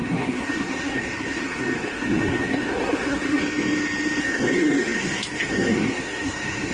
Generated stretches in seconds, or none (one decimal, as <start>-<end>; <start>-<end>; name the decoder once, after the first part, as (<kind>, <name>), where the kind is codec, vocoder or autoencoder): 0.0-3.4 (codec, SNAC); 4.2-6.7